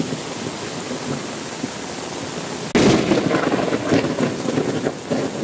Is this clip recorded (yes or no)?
yes